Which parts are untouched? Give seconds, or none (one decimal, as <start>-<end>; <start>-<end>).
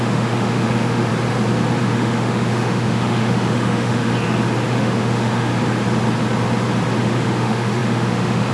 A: 1.1-1.8; 4.1-4.7; 5.5-7.0